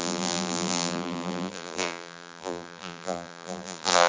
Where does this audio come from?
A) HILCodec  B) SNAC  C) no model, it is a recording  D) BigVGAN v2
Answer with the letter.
D